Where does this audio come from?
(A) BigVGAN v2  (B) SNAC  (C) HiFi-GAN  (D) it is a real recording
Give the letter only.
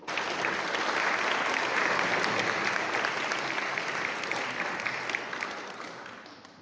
D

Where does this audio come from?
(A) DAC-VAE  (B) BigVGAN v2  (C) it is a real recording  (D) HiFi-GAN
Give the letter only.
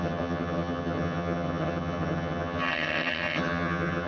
D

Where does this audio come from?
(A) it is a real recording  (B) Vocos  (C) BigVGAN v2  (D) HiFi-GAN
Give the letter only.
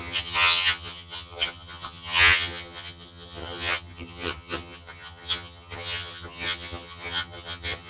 D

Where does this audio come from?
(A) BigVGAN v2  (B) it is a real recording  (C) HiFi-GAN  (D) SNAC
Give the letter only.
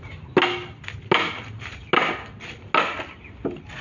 B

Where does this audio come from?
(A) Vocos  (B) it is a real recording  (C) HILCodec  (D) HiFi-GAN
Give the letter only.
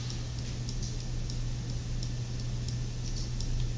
B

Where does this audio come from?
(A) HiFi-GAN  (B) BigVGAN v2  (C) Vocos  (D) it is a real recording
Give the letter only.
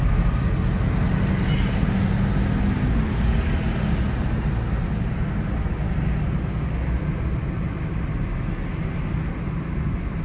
D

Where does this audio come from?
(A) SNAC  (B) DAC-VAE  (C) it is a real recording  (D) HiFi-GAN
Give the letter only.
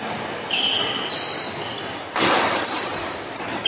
C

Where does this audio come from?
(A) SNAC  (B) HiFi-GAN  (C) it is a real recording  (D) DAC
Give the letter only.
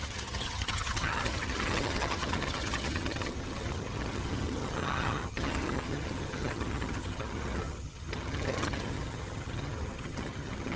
B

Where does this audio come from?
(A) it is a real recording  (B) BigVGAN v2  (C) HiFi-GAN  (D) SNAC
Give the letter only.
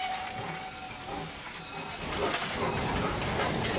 A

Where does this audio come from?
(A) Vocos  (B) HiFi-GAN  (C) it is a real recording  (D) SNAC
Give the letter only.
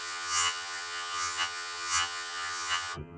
B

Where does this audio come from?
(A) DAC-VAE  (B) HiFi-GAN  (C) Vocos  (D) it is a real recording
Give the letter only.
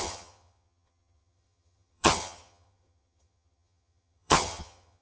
B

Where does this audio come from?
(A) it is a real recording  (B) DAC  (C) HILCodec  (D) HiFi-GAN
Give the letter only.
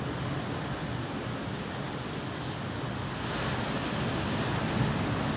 A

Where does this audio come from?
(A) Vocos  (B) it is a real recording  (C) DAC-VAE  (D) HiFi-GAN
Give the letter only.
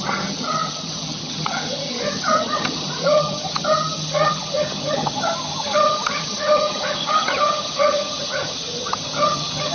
D